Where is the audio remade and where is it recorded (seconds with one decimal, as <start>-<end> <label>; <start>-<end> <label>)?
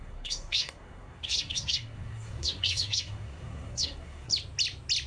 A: 0.0-4.3 remade; 4.3-5.1 recorded